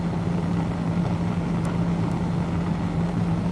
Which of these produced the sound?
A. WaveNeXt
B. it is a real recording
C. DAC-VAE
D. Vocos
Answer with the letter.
B